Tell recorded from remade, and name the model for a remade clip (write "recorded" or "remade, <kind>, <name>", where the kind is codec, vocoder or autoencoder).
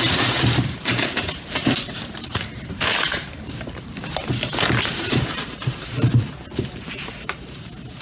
remade, vocoder, BigVGAN v2